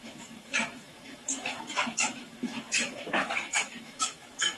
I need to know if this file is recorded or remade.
remade